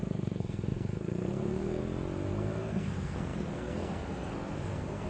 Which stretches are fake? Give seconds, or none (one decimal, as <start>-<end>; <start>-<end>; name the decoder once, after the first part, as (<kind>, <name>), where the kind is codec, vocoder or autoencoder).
0.0-1.8 (codec, SNAC); 2.3-5.1